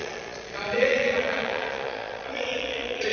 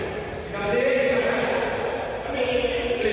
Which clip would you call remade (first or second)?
first